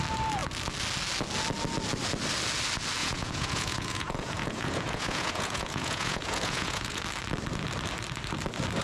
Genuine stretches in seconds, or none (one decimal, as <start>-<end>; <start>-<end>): 0.0-3.0; 7.0-8.8